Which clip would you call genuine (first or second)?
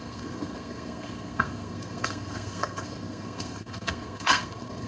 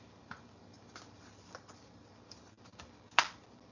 second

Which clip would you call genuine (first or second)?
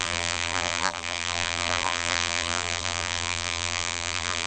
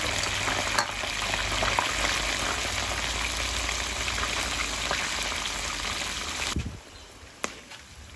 second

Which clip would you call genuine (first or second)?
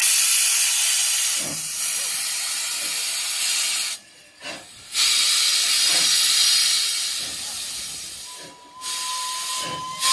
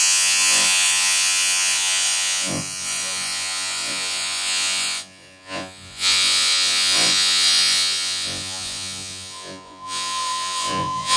first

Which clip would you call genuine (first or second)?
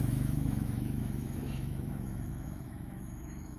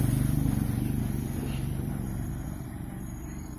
second